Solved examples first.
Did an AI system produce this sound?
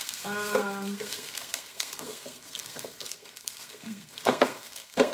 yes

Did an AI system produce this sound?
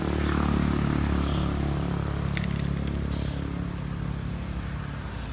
no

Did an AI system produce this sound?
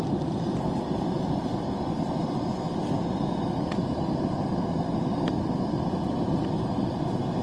no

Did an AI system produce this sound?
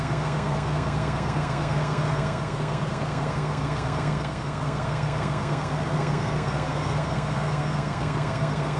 yes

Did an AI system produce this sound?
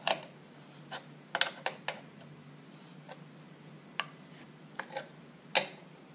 no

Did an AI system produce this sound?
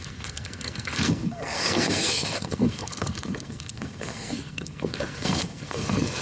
yes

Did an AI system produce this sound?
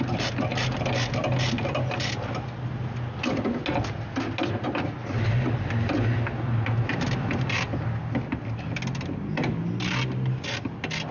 no